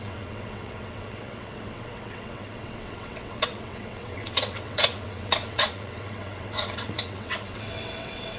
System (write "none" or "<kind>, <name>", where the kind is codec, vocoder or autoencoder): vocoder, WaveNeXt